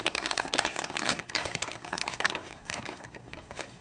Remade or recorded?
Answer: remade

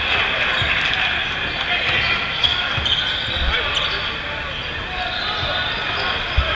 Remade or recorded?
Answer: recorded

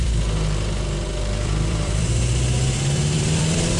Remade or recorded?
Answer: remade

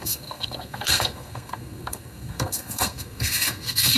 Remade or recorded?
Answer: remade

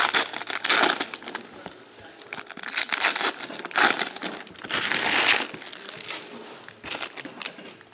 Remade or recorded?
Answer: recorded